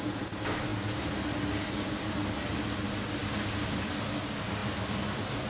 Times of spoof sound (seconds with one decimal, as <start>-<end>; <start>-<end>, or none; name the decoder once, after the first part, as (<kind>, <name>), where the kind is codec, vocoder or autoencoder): none